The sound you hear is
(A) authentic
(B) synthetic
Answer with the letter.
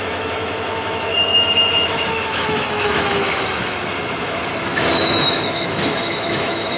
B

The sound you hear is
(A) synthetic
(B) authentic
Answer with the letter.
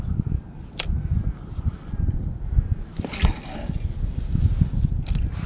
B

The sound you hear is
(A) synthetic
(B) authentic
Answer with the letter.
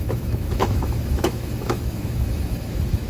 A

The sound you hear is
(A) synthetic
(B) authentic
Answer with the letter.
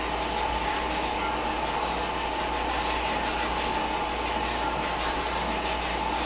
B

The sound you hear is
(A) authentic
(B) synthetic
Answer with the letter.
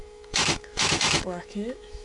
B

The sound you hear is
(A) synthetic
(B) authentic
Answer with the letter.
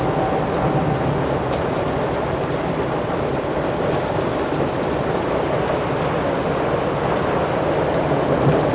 B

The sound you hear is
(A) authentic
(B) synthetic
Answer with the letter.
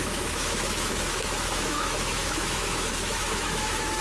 B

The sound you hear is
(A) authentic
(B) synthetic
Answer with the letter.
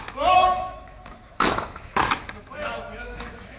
B